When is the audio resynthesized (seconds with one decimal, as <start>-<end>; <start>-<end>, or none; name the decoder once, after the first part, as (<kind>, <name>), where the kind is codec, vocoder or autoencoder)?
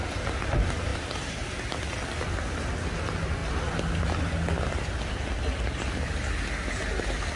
none